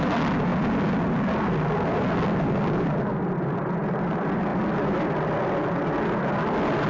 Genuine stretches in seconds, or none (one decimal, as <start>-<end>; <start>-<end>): 0.0-6.9